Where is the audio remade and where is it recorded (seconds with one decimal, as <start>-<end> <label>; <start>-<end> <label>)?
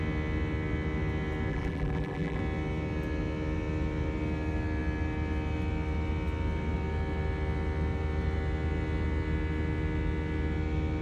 0.0-1.5 recorded; 1.5-2.4 remade; 2.4-11.0 recorded